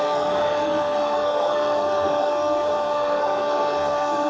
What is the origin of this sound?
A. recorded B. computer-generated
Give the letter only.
B